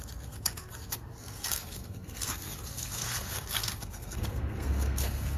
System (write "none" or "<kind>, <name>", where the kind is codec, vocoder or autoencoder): codec, SNAC